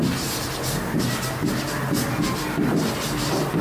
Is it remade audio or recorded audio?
recorded